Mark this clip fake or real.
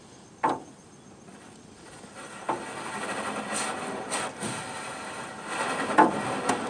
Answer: real